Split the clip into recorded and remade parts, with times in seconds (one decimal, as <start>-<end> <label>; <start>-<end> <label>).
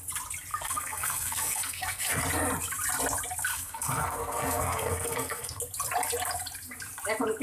0.0-0.5 recorded; 0.5-2.2 remade; 2.2-3.5 recorded; 3.5-5.6 remade; 5.6-7.4 recorded